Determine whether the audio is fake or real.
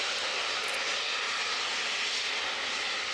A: real